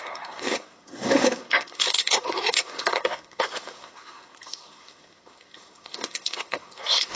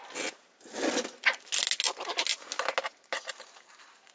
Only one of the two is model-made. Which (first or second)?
first